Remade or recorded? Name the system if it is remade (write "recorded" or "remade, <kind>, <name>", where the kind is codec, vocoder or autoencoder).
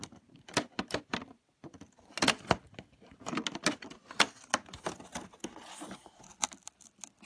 recorded